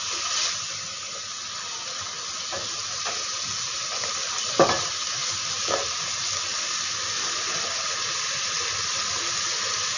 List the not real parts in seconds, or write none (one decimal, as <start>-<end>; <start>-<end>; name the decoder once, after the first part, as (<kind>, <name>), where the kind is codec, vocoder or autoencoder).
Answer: none